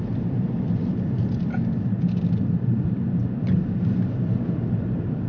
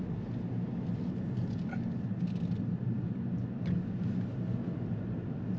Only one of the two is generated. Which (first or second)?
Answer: first